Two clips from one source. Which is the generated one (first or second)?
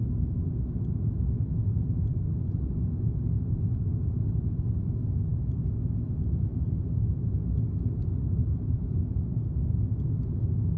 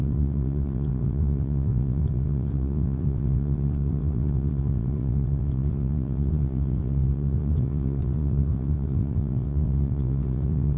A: second